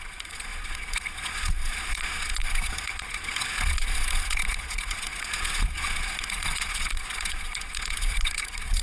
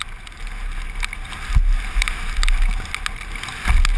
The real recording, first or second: second